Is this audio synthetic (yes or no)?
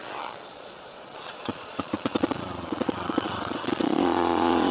yes